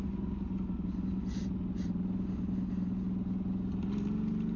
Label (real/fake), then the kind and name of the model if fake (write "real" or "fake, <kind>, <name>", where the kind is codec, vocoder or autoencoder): real